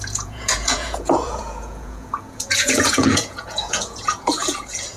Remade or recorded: remade